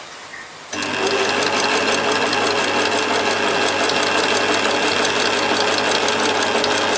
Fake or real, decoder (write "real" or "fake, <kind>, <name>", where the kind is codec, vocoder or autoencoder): real